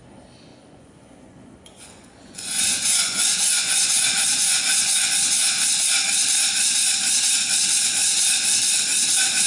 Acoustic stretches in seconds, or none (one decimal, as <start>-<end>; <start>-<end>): 0.0-0.5; 5.1-9.5